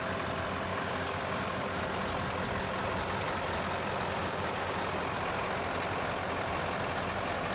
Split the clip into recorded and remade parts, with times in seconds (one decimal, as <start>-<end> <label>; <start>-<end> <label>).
0.0-0.7 recorded; 0.7-1.8 remade; 1.8-4.2 recorded; 4.2-4.8 remade; 4.8-7.5 recorded